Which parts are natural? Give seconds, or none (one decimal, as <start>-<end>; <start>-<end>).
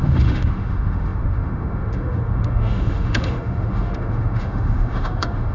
none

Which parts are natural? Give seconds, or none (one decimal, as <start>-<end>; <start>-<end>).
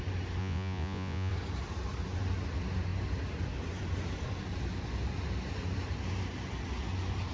0.0-0.4; 1.3-7.3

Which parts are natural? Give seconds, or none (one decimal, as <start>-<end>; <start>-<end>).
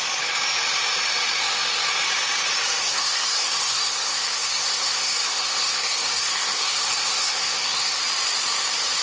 0.0-2.8; 8.0-9.0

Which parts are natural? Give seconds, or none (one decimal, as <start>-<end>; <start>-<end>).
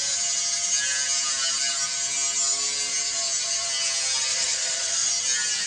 0.0-4.3; 5.1-5.7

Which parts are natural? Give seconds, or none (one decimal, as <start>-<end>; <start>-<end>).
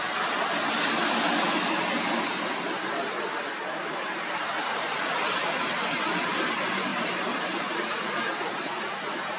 0.0-3.6; 5.0-6.9; 8.0-9.4